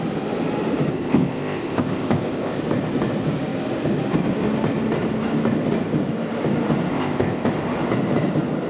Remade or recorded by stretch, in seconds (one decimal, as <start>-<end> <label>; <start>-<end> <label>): 0.0-0.9 recorded; 0.9-2.6 remade; 2.6-6.9 recorded; 6.9-7.5 remade; 7.5-8.7 recorded